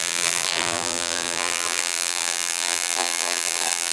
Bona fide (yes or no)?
no